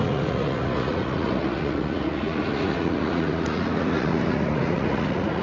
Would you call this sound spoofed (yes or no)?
yes